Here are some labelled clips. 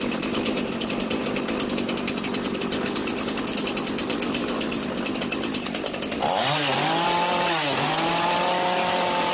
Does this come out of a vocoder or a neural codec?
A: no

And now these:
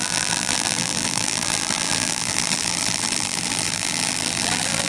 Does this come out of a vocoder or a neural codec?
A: yes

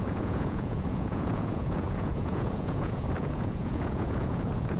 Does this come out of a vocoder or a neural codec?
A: yes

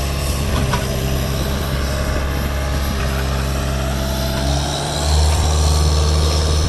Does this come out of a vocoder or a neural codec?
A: yes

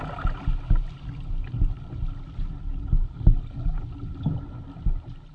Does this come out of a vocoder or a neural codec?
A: no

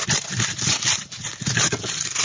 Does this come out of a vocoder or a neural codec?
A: no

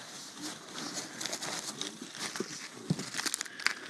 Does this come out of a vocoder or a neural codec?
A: no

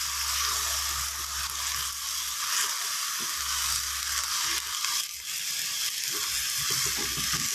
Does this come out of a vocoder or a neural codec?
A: no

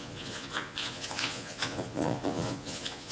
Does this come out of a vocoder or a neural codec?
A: yes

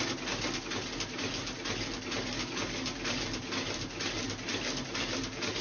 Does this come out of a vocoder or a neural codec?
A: no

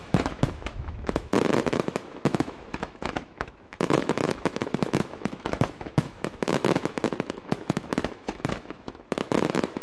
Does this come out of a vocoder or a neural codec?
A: yes